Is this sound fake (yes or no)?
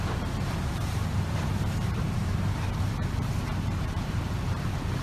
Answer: yes